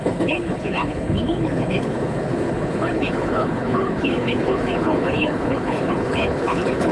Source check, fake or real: fake